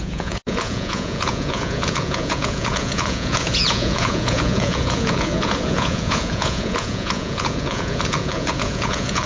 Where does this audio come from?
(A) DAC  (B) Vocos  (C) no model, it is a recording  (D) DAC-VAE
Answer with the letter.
B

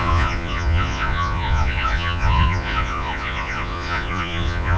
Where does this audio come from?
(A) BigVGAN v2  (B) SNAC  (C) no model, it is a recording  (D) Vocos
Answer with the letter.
D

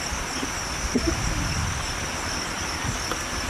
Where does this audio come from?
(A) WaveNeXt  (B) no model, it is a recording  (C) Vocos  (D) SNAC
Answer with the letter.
B